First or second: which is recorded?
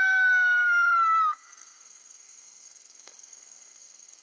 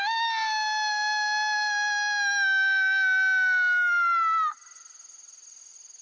second